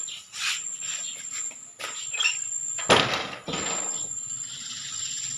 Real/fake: real